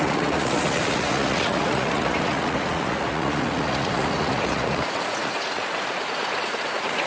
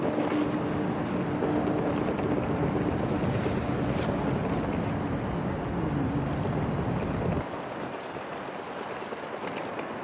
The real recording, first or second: second